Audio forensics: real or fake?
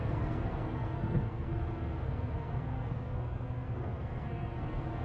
fake